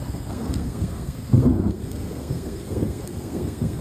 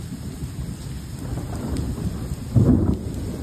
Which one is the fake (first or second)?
first